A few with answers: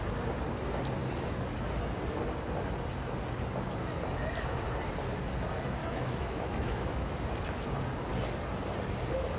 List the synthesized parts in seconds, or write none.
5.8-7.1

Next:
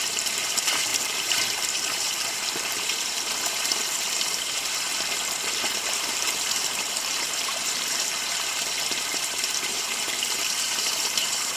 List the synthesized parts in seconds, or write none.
0.0-4.9; 5.6-11.6

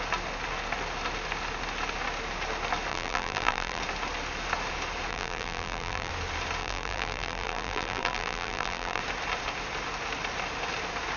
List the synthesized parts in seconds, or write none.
2.9-3.8; 5.1-6.1; 6.6-9.0